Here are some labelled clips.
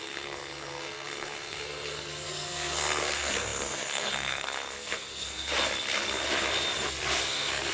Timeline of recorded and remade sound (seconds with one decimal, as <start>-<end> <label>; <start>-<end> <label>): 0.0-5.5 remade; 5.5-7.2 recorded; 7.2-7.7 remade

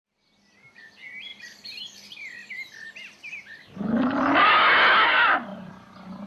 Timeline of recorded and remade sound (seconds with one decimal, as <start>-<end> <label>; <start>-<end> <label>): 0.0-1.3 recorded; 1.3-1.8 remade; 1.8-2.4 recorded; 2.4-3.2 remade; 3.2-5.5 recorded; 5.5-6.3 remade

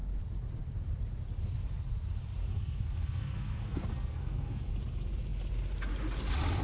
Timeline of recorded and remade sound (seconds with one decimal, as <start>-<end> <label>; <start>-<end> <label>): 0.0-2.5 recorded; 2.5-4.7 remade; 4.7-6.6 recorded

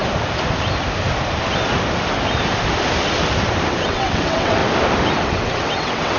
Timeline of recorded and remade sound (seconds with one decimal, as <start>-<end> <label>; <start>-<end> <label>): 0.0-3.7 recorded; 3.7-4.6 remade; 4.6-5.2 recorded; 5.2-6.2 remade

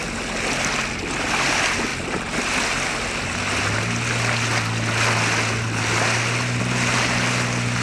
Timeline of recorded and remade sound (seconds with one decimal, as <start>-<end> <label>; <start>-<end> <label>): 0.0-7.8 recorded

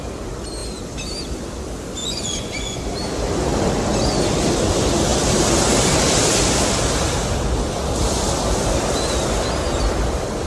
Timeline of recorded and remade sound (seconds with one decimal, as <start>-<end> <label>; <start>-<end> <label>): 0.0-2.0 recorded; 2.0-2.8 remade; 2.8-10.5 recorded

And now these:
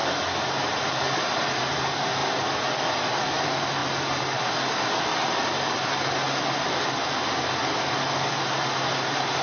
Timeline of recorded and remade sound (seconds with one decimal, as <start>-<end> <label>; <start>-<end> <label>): 0.0-0.6 recorded; 0.6-2.2 remade; 2.2-2.9 recorded; 2.9-5.1 remade; 5.1-8.3 recorded; 8.3-9.4 remade

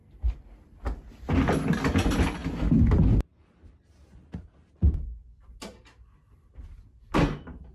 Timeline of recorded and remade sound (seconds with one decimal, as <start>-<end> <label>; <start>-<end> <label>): 0.0-7.7 recorded